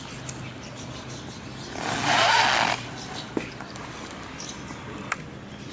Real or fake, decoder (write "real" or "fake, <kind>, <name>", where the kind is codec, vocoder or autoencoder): real